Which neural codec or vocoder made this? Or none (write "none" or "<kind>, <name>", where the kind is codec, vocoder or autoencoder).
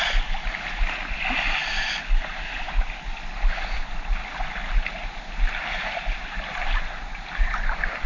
none